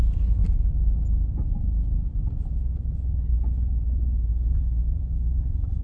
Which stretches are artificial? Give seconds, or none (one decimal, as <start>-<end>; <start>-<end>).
4.3-5.8